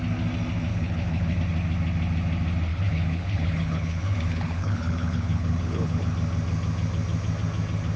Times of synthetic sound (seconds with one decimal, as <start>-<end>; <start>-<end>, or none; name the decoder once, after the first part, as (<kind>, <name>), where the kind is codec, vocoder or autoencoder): 0.7-1.4 (codec, HILCodec); 2.7-6.0